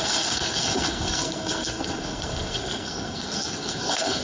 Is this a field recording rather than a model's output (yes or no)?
no